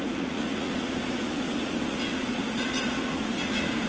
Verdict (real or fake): fake